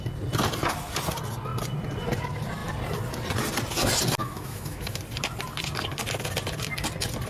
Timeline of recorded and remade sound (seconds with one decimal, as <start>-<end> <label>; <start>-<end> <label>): 0.0-4.2 recorded; 4.2-5.0 remade; 5.0-7.3 recorded